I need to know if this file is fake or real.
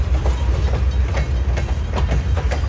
real